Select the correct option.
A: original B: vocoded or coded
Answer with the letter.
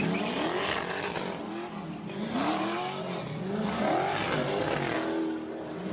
A